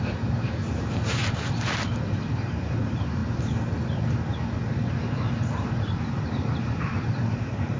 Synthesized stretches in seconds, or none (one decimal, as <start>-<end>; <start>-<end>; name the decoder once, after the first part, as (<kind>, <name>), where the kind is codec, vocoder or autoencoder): 0.0-3.2 (vocoder, BigVGAN v2); 4.9-7.8